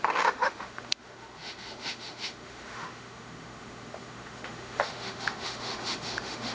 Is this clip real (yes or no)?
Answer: no